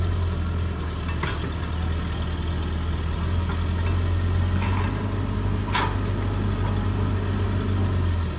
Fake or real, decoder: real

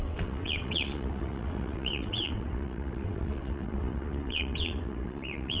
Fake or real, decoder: fake, vocoder, WaveNeXt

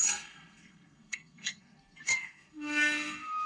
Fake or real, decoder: fake, codec, SNAC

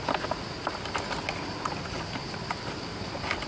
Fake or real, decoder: real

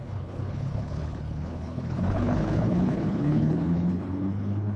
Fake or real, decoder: fake, codec, HILCodec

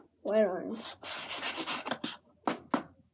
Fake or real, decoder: real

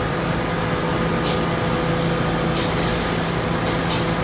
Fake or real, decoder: real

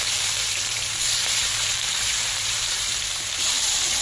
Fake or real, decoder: fake, vocoder, BigVGAN v2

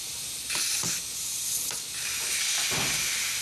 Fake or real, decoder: real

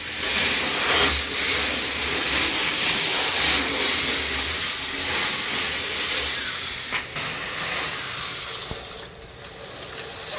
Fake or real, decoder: real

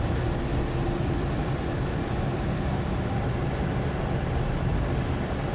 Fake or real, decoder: real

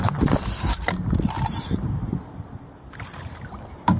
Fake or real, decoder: fake, vocoder, BigVGAN v2